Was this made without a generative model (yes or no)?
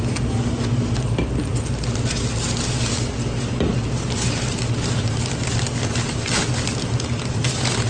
yes